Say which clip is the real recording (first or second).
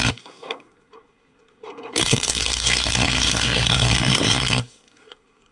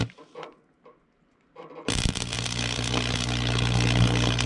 second